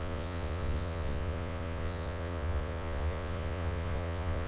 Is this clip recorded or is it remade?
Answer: remade